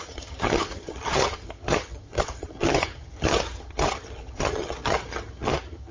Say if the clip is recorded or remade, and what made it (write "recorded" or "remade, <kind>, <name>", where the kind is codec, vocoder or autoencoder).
remade, vocoder, HiFi-GAN